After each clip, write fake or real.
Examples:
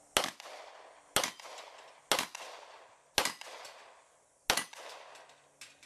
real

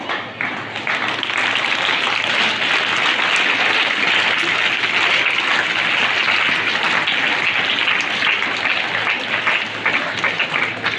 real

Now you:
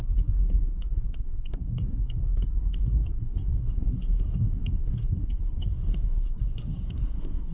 fake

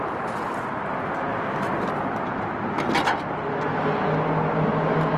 real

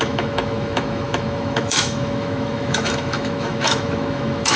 fake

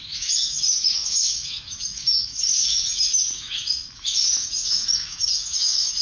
fake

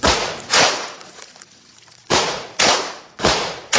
fake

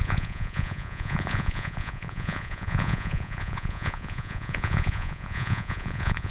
fake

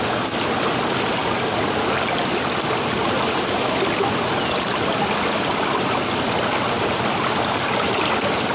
real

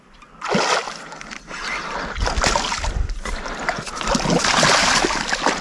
real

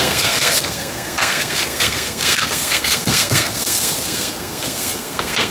fake